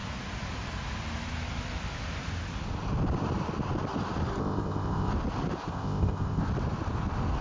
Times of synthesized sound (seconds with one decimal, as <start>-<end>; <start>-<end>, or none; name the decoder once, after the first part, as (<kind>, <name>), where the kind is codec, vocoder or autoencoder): 4.4-5.1 (codec, ZipCodec); 5.7-6.4